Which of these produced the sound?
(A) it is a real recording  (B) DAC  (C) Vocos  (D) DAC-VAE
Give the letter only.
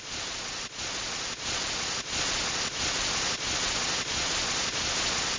C